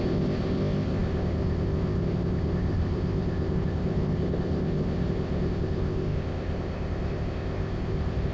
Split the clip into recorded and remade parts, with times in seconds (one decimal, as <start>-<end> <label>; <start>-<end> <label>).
0.0-8.3 remade